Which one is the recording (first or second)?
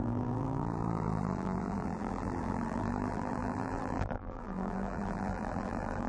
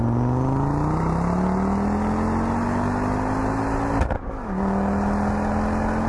second